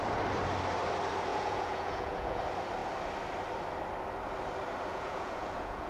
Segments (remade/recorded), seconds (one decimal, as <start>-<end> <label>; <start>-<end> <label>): 0.0-1.3 recorded; 1.3-2.4 remade; 2.4-4.9 recorded; 4.9-5.9 remade